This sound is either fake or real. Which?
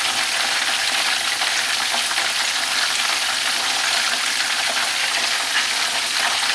real